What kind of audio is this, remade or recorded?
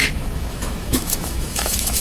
remade